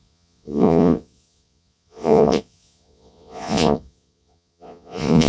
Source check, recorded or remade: remade